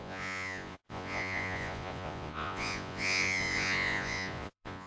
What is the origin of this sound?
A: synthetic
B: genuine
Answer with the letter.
A